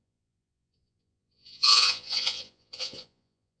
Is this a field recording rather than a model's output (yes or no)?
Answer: no